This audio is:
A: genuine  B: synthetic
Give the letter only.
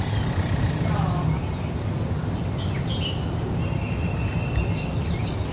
A